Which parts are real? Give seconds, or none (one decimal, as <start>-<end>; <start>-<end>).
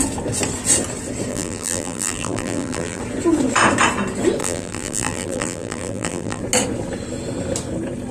0.0-1.3; 3.0-4.4; 6.4-8.1